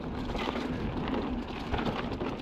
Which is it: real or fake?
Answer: real